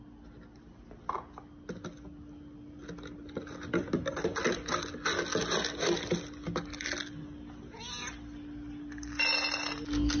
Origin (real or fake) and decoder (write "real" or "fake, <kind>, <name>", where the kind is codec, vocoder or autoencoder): real